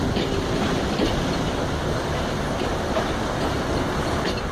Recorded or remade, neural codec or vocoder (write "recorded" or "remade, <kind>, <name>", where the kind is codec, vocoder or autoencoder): recorded